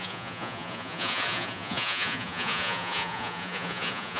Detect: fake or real fake